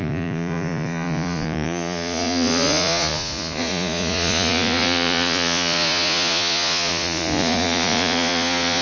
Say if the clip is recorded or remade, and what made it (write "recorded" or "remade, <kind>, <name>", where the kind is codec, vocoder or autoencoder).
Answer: remade, vocoder, Vocos